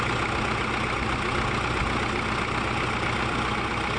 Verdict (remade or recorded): recorded